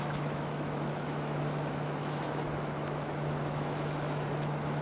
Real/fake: fake